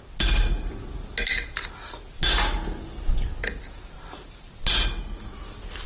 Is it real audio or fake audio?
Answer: real